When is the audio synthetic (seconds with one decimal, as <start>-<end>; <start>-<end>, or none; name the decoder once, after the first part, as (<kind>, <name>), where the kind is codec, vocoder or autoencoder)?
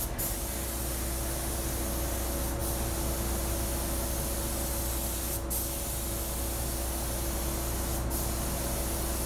none